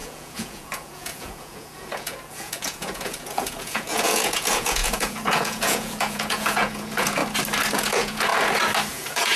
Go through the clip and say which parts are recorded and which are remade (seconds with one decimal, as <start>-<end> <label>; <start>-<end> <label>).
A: 0.0-7.2 remade; 7.2-7.7 recorded; 7.7-8.3 remade; 8.3-8.9 recorded; 8.9-9.4 remade